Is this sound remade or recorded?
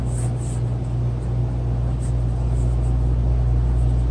recorded